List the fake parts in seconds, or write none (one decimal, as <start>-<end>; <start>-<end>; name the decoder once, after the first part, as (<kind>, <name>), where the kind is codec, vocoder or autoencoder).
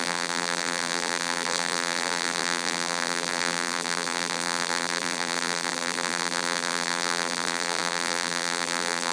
0.0-9.1 (vocoder, BigVGAN v2)